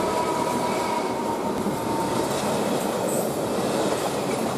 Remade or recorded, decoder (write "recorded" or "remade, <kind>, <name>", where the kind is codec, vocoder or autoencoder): recorded